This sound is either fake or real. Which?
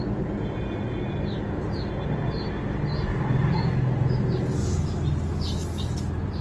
real